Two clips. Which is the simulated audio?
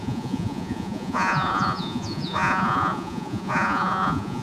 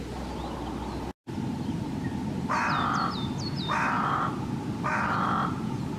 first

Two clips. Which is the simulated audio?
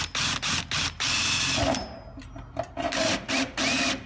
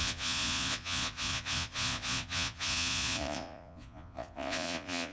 second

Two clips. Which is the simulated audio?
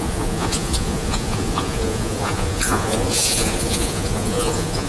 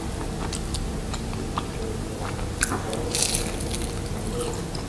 first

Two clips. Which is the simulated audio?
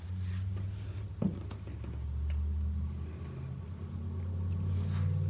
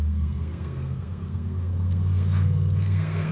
second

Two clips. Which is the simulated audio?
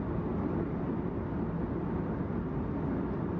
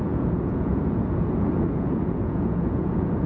second